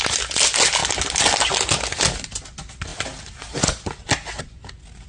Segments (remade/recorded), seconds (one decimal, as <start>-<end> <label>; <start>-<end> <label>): 0.0-5.1 recorded